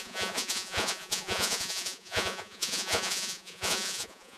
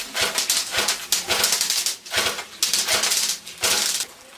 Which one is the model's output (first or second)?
first